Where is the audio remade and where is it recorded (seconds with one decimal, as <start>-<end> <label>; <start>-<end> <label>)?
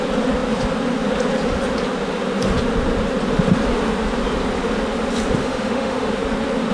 0.0-5.4 recorded; 5.4-6.1 remade; 6.1-6.7 recorded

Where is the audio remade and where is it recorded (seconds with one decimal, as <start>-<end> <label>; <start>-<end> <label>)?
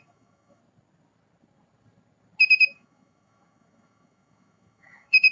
0.0-0.6 remade; 0.6-2.7 recorded; 2.7-5.3 remade